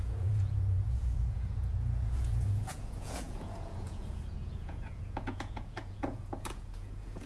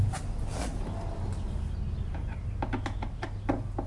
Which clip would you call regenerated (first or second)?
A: first